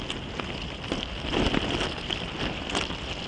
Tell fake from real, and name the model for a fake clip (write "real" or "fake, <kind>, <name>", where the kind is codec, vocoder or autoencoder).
real